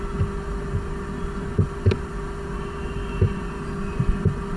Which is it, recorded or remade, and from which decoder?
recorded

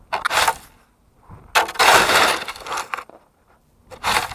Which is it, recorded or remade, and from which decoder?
recorded